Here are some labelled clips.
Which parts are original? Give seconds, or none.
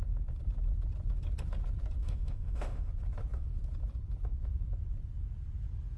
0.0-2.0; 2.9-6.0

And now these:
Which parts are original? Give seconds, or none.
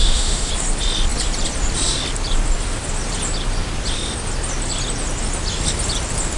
0.5-6.4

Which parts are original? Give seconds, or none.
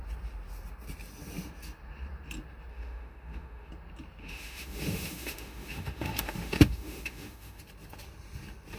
0.0-2.7; 3.7-4.2; 7.6-8.8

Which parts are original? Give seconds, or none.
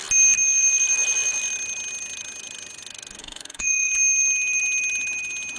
0.0-3.2; 3.9-5.6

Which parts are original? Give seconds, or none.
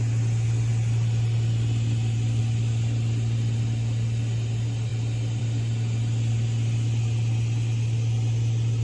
0.0-8.8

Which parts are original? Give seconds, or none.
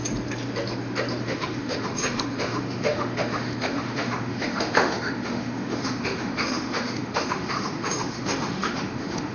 0.0-1.2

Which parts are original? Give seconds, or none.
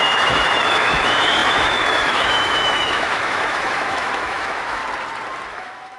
4.8-5.5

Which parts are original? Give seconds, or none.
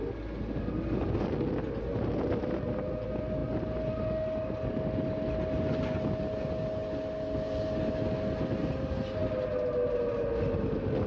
0.0-11.1